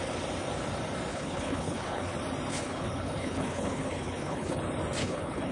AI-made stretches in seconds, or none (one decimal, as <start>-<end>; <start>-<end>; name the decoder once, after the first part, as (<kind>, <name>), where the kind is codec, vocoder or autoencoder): 1.1-2.1 (codec, HILCodec); 2.5-4.6; 5.0-5.5

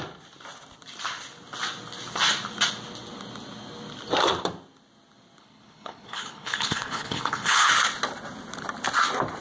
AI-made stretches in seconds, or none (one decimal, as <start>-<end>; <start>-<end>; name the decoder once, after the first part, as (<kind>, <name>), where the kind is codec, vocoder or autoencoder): 5.4-7.7 (codec, HILCodec)

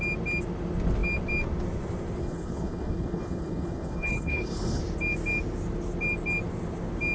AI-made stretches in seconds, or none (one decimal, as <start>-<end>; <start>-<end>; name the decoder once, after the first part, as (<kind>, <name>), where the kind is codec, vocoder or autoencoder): 2.2-4.8 (codec, HILCodec)